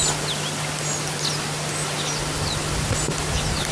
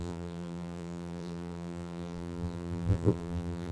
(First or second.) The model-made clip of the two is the second